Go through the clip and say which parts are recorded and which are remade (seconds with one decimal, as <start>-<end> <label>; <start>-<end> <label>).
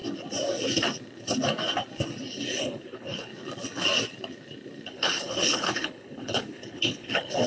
0.0-2.6 recorded; 2.6-3.3 remade; 3.3-4.9 recorded; 4.9-7.5 remade